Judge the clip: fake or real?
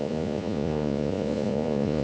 fake